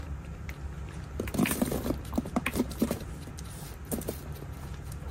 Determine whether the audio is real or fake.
real